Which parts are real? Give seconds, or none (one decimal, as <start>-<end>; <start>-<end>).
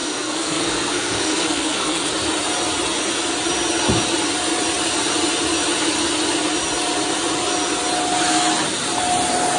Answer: 2.1-9.6